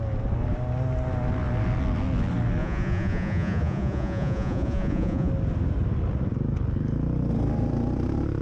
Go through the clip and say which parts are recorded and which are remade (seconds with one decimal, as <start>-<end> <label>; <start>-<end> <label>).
0.0-2.6 recorded; 2.6-5.3 remade; 5.3-8.4 recorded